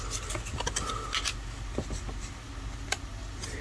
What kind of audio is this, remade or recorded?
recorded